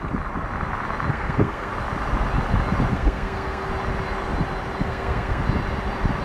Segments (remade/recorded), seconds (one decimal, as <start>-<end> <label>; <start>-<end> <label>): 0.0-1.1 recorded; 1.1-1.7 remade; 1.7-2.9 recorded; 2.9-3.7 remade; 3.7-4.8 recorded; 4.8-5.4 remade; 5.4-6.2 recorded